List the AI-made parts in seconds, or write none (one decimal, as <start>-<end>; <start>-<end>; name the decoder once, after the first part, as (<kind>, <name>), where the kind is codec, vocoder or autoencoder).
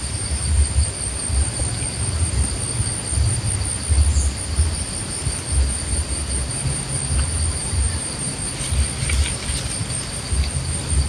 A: 7.6-8.5 (vocoder, BigVGAN v2)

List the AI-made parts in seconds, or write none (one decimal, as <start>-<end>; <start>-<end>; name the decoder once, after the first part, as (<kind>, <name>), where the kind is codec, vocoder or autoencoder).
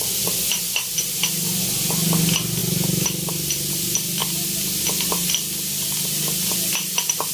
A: none